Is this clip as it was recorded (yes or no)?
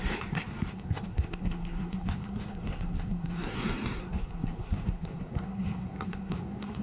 no